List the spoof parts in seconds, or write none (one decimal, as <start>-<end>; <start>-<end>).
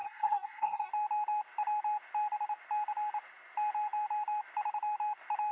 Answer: 0.0-0.9